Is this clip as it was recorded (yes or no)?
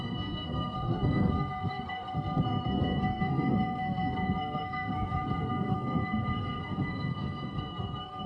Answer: no